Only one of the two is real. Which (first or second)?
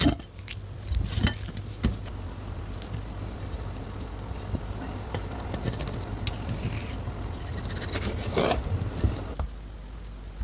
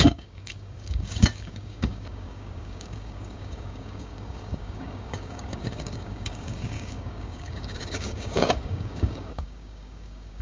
first